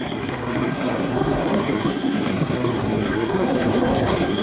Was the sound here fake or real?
fake